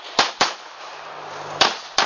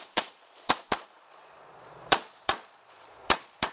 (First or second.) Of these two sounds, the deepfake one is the second